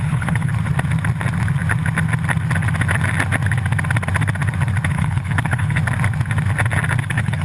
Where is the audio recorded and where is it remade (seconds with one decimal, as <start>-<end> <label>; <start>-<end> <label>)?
0.0-0.5 remade; 0.5-4.9 recorded; 4.9-5.8 remade; 5.8-7.0 recorded; 7.0-7.4 remade